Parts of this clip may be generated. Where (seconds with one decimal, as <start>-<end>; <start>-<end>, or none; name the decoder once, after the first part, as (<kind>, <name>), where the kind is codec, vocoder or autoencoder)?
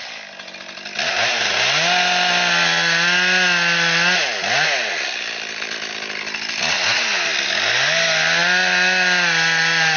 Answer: none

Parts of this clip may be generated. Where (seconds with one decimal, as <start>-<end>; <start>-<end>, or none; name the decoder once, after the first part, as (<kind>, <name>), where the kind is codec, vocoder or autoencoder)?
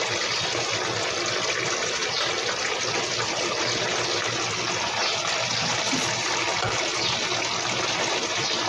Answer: none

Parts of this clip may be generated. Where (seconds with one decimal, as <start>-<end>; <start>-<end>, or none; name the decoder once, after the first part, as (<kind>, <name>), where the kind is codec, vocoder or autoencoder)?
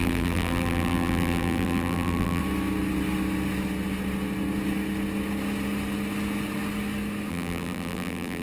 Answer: 0.0-2.4 (vocoder, BigVGAN v2); 7.3-8.4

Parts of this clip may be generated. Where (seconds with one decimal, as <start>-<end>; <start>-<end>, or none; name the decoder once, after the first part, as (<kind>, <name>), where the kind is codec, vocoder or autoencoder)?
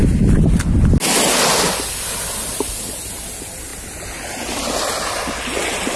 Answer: none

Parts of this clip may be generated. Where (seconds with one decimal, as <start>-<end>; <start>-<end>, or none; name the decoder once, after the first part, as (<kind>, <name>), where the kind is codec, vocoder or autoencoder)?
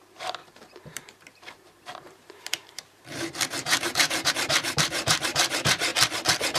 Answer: 0.0-5.9 (vocoder, BigVGAN v2)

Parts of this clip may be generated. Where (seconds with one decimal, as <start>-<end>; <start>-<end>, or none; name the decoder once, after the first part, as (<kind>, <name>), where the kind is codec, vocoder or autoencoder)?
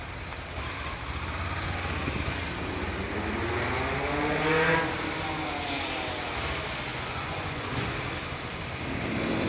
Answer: 6.9-8.0 (vocoder, Vocos)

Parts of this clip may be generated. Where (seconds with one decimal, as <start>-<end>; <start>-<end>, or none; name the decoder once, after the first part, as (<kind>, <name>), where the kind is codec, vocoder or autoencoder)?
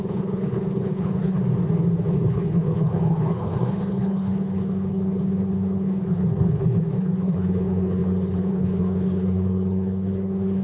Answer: 0.0-1.4 (codec, HILCodec); 2.1-10.6